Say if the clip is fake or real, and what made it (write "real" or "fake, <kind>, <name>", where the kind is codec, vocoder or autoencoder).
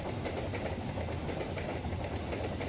real